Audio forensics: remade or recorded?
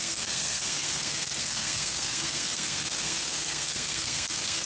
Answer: remade